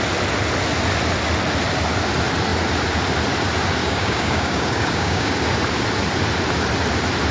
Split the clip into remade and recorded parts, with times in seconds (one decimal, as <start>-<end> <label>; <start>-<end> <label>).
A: 0.0-3.8 recorded; 3.8-5.3 remade; 5.3-7.3 recorded